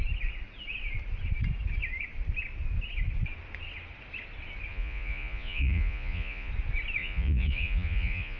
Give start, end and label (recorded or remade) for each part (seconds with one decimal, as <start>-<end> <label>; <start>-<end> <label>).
0.0-4.7 recorded; 4.7-6.5 remade; 6.5-7.0 recorded; 7.0-8.4 remade